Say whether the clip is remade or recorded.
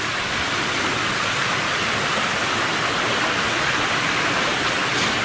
recorded